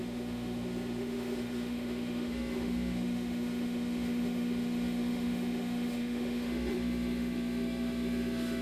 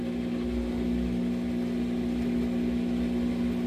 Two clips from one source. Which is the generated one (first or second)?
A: first